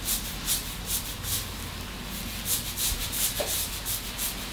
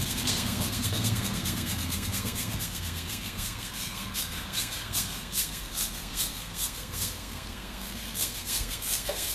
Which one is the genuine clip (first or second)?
first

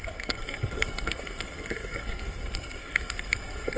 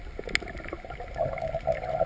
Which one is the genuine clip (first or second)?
second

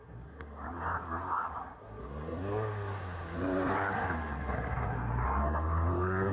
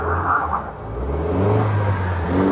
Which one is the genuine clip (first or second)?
second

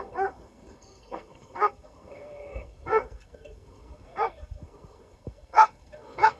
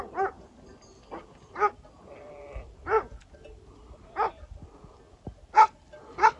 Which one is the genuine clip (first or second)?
second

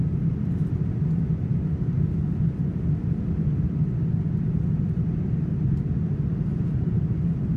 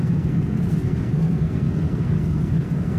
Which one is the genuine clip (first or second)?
first